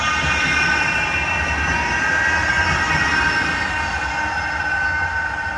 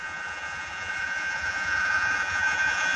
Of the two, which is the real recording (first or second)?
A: first